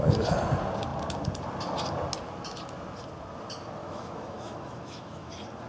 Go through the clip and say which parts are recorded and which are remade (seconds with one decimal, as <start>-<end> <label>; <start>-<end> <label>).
0.0-3.8 recorded; 3.8-5.3 remade; 5.3-5.7 recorded